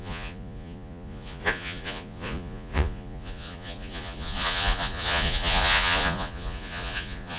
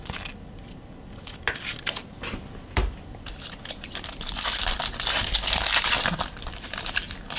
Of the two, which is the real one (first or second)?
second